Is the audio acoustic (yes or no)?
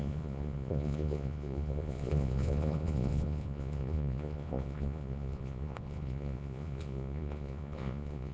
no